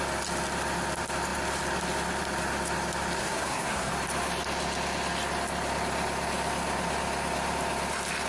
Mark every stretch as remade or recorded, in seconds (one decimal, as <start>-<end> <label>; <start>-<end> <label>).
0.0-3.2 recorded; 3.2-3.9 remade; 3.9-8.3 recorded